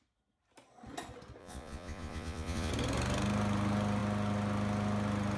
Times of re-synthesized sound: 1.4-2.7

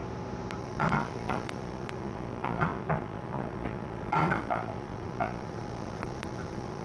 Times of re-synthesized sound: 0.6-6.8

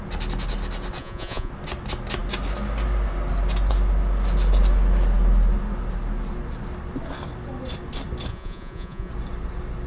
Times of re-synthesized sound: 1.0-1.5; 8.3-9.1

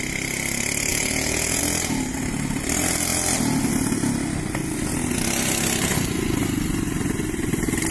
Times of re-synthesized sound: 0.9-1.6